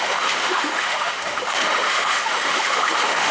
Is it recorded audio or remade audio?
remade